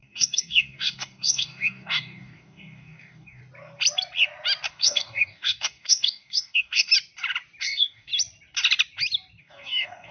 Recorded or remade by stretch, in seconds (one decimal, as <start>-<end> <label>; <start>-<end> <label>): 0.0-3.4 remade; 3.4-4.7 recorded; 4.7-6.9 remade; 6.9-7.6 recorded; 7.6-8.1 remade; 8.1-9.4 recorded; 9.4-10.1 remade